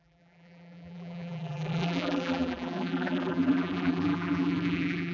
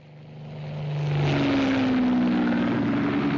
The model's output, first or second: first